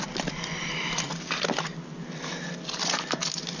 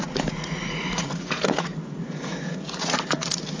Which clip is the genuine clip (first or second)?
first